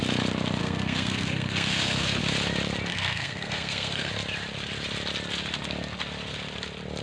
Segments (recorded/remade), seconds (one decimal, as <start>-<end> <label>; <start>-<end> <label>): 0.0-0.6 recorded; 0.6-2.2 remade; 2.2-2.9 recorded; 2.9-4.1 remade; 4.1-7.0 recorded

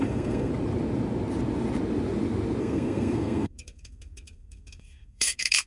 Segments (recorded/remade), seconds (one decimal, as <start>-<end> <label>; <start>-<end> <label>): 0.0-0.5 remade; 0.5-2.6 recorded; 2.6-5.7 remade

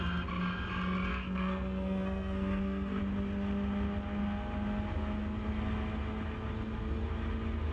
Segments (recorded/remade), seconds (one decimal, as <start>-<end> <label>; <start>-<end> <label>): 0.0-1.1 recorded; 1.1-3.0 remade; 3.0-7.7 recorded

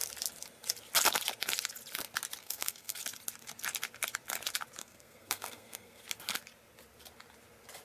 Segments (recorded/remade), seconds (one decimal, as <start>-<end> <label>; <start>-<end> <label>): 0.0-2.4 recorded; 2.4-3.0 remade; 3.0-4.8 recorded; 4.8-6.0 remade; 6.0-7.8 recorded

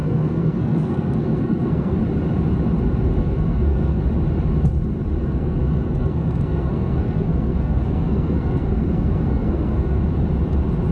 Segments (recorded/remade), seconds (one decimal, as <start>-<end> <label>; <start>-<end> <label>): 0.0-2.0 remade; 2.0-3.2 recorded; 3.2-4.0 remade; 4.0-5.2 recorded; 5.2-10.0 remade; 10.0-10.9 recorded